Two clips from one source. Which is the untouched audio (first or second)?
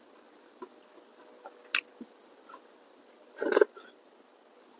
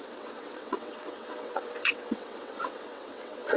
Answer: first